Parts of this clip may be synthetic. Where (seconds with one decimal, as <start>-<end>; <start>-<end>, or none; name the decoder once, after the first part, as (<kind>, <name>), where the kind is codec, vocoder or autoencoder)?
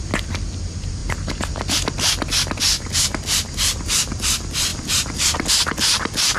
0.0-6.4 (vocoder, BigVGAN v2)